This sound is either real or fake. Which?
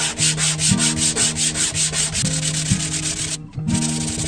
real